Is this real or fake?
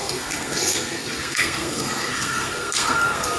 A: fake